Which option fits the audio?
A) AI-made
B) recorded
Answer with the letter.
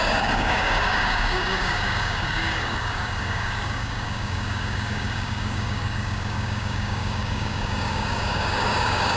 A